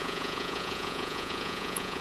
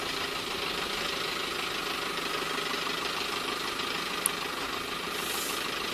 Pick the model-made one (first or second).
first